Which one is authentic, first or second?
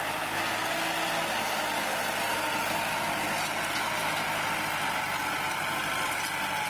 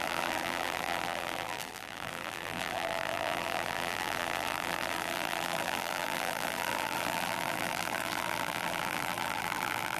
first